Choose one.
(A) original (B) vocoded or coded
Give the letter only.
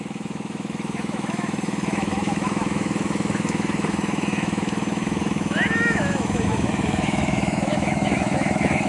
B